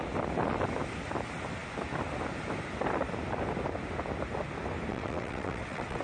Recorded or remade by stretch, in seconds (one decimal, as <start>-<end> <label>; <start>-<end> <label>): 0.0-4.9 recorded; 4.9-6.0 remade